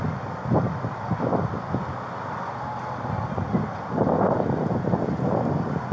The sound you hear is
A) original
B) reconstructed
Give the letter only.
A